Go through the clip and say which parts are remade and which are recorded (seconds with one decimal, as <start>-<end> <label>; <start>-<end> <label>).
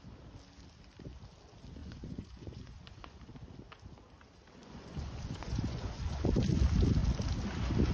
0.0-1.8 recorded; 1.8-3.2 remade; 3.2-4.6 recorded; 4.6-6.3 remade; 6.3-7.9 recorded